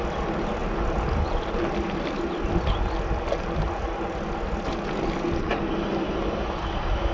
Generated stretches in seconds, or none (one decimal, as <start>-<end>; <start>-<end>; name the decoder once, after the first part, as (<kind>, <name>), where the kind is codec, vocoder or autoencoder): none

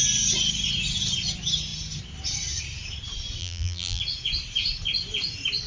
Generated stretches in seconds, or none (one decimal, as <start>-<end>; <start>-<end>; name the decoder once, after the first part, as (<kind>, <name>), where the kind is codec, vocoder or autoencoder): 3.4-4.0 (vocoder, BigVGAN v2)

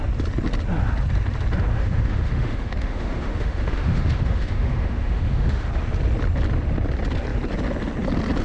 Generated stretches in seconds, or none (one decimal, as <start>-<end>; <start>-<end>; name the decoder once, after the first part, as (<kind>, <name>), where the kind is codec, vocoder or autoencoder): 1.7-5.7 (autoencoder, DAC-VAE)

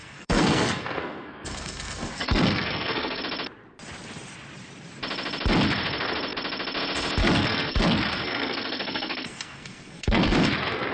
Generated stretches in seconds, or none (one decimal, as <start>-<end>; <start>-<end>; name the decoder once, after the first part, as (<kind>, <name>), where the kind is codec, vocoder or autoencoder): 0.0-3.2 (codec, SNAC); 7.2-10.9